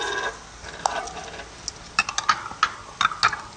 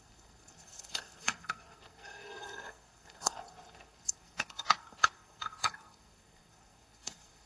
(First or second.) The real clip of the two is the first